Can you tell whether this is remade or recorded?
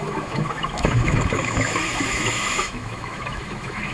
remade